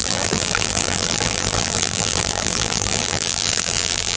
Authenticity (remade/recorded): remade